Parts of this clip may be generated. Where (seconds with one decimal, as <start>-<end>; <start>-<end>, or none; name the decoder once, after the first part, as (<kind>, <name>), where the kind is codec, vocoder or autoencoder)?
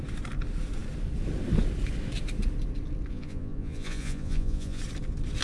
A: 3.1-4.8 (vocoder, Vocos)